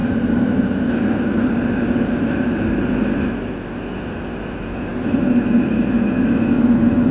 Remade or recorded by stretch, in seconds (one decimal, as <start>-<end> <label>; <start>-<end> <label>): 0.0-3.1 remade; 3.1-7.1 recorded